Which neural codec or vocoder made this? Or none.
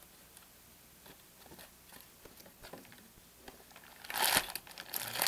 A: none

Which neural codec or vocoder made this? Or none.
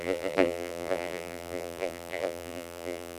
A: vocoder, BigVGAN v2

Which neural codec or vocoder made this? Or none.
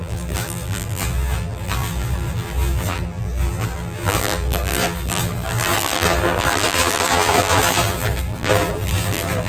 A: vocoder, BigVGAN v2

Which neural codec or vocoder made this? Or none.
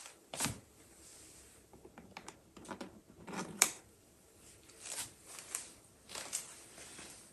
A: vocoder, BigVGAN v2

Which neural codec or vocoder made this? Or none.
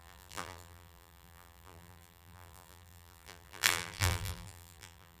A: vocoder, BigVGAN v2